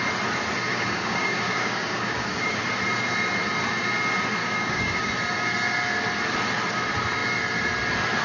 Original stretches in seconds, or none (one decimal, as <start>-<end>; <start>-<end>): 0.0-0.7; 2.6-4.4; 5.1-8.2